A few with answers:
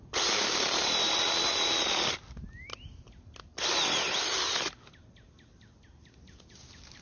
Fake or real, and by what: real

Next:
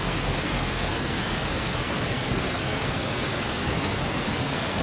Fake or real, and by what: fake, codec, SNAC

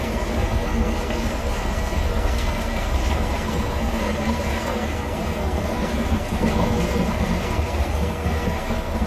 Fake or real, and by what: fake, codec, SNAC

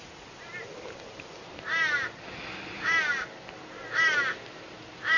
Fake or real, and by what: real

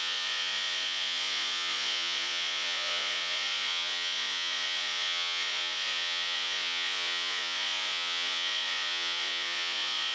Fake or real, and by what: fake, vocoder, Vocos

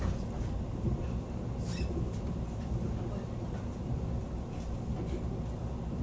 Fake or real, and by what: real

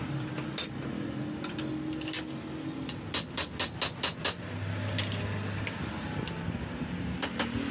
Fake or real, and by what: real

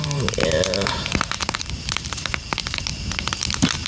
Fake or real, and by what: fake, vocoder, BigVGAN v2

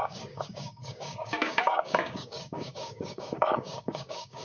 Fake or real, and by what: fake, codec, DAC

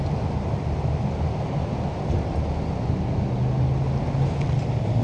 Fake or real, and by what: real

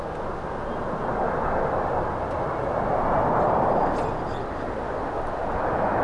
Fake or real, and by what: real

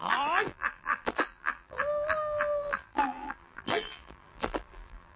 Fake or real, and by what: fake, vocoder, BigVGAN v2